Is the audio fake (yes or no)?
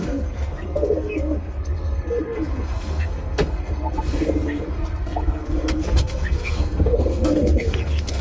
yes